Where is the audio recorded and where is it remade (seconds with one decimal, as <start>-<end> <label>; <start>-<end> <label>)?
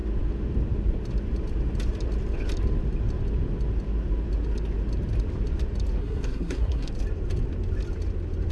0.0-6.0 recorded; 6.0-6.9 remade; 6.9-8.5 recorded